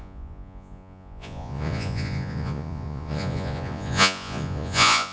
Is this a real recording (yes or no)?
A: no